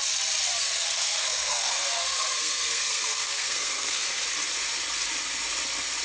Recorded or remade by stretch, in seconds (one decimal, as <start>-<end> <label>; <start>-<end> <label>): 0.0-0.6 recorded; 0.6-4.2 remade; 4.2-6.0 recorded